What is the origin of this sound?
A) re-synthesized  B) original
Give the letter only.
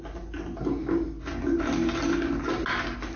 B